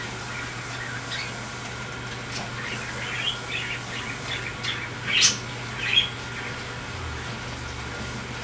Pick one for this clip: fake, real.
real